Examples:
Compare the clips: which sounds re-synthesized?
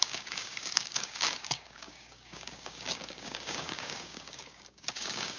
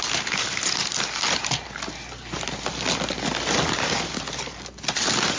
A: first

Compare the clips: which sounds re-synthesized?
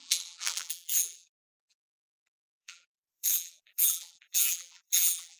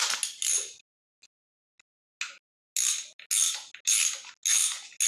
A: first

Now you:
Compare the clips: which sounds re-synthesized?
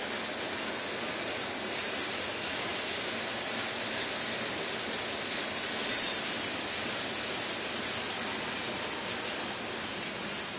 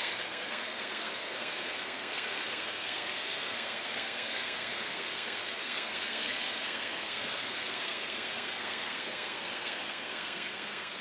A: second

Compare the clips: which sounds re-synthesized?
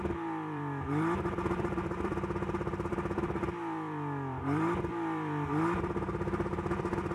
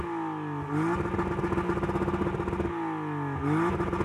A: first